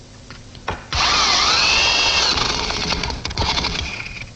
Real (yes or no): no